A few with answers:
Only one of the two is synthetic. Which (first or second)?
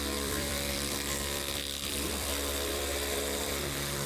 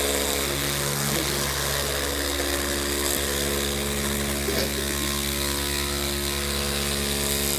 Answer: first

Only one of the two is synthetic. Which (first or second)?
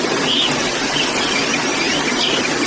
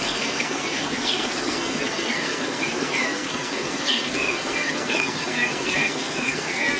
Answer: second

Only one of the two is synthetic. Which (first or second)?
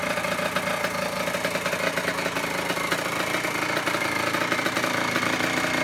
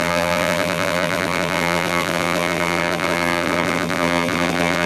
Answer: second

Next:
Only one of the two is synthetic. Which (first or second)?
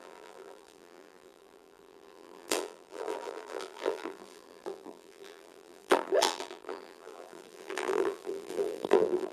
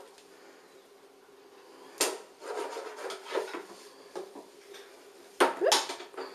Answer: first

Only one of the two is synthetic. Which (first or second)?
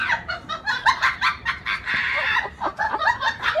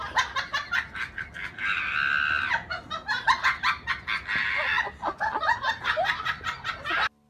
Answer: first